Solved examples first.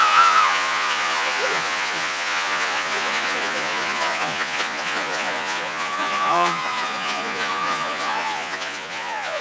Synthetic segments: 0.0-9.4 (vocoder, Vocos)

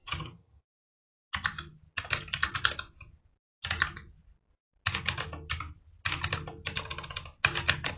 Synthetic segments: 0.0-0.6 (vocoder, HiFi-GAN)

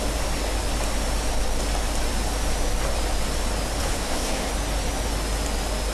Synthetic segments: 3.8-4.5 (codec, SNAC)

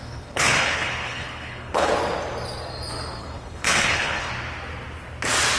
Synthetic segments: 0.0-1.9 (codec, HILCodec); 3.2-4.3

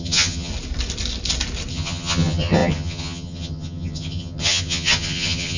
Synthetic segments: 0.0-0.5 (vocoder, HiFi-GAN); 1.7-5.6